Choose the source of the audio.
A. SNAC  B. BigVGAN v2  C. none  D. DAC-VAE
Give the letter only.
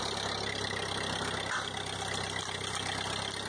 C